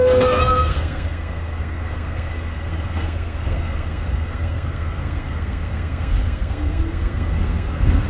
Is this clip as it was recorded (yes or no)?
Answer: no